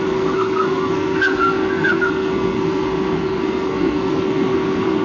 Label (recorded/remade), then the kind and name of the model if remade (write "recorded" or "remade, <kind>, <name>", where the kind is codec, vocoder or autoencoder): remade, codec, SNAC